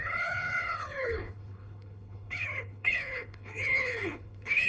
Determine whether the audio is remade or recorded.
remade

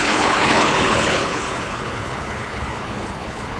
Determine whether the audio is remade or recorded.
remade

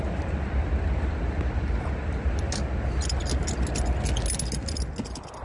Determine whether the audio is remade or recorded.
recorded